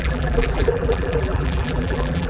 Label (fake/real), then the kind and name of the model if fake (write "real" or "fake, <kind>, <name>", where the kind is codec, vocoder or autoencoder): fake, vocoder, BigVGAN v2